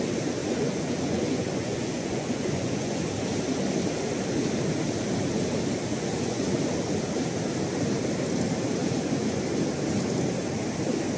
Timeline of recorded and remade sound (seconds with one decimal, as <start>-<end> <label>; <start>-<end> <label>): 0.0-0.4 recorded; 0.4-3.0 remade; 3.0-5.9 recorded; 5.9-6.6 remade; 6.6-8.8 recorded; 8.8-9.4 remade; 9.4-11.2 recorded